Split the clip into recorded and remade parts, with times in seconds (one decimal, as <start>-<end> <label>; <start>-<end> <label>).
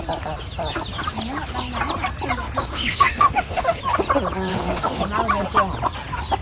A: 0.0-2.6 recorded; 2.6-3.8 remade; 3.8-4.5 recorded; 4.5-5.0 remade; 5.0-6.4 recorded